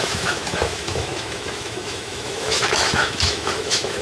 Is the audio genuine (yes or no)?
no